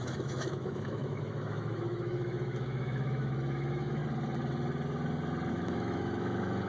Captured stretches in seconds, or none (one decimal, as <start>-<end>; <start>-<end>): 4.0-5.5